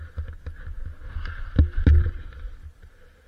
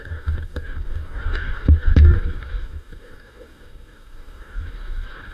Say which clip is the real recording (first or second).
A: first